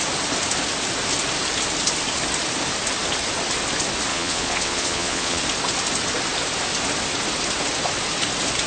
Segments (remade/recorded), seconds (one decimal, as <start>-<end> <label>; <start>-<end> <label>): 0.0-4.1 recorded; 4.1-5.4 remade; 5.4-8.7 recorded